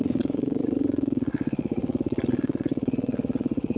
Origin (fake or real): fake